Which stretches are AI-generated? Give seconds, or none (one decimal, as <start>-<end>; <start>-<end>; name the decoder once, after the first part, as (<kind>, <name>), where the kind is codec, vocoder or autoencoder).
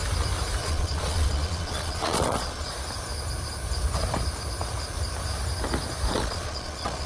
0.6-2.7 (vocoder, Vocos); 6.2-7.1